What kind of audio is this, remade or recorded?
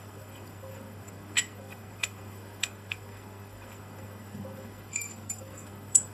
remade